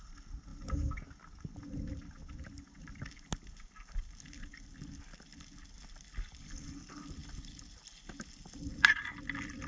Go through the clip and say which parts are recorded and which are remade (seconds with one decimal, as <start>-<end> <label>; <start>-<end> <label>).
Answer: 0.0-9.7 recorded